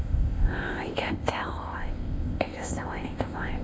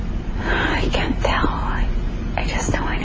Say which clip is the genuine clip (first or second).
second